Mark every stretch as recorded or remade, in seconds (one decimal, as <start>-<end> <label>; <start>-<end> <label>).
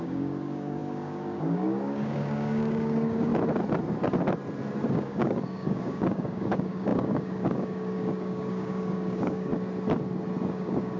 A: 0.0-3.3 remade; 3.3-4.9 recorded; 4.9-9.5 remade; 9.5-10.5 recorded; 10.5-11.0 remade